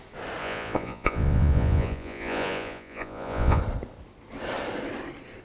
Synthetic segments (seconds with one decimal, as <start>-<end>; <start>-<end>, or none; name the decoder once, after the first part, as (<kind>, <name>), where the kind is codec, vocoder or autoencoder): 0.4-3.6 (vocoder, Vocos)